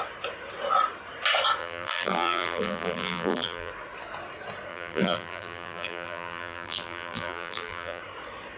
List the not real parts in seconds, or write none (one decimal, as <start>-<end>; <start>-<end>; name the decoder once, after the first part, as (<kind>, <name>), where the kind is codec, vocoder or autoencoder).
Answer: 1.6-3.7 (vocoder, BigVGAN v2); 4.7-8.0